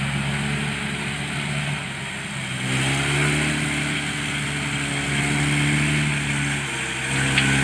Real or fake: real